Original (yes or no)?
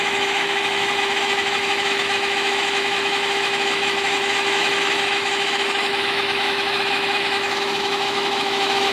no